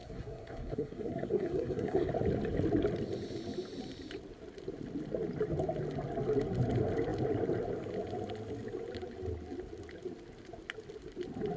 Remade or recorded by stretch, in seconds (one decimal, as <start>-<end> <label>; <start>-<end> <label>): 0.0-2.1 remade; 2.1-11.6 recorded

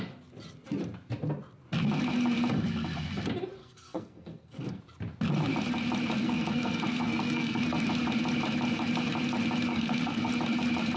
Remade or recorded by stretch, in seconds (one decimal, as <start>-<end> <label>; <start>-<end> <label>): 0.0-3.6 recorded; 3.6-4.8 remade; 4.8-6.2 recorded; 6.2-7.9 remade; 7.9-9.7 recorded; 9.7-10.3 remade; 10.3-11.0 recorded

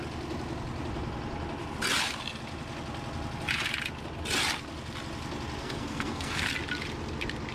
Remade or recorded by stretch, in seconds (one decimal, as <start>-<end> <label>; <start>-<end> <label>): 0.0-5.6 recorded; 5.6-6.5 remade; 6.5-7.5 recorded

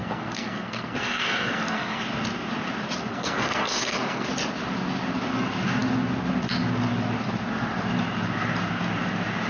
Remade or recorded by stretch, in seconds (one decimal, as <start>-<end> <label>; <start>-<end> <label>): 0.0-2.0 remade; 2.0-3.1 recorded; 3.1-4.3 remade; 4.3-9.5 recorded

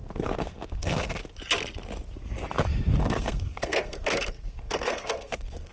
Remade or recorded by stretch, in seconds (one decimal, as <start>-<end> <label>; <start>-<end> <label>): 0.0-1.2 remade; 1.2-3.0 recorded; 3.0-5.7 remade